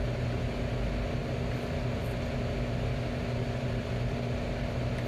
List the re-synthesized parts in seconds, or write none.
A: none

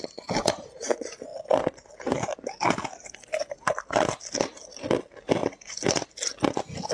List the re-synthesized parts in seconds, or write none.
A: none